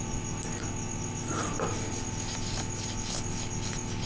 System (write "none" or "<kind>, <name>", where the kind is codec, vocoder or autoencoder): none